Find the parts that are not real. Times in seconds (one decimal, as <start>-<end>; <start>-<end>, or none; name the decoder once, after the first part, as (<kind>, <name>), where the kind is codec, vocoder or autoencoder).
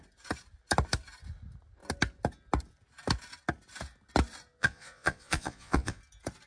4.6-6.0 (vocoder, Vocos)